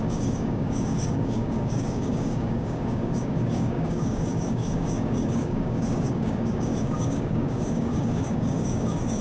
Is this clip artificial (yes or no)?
yes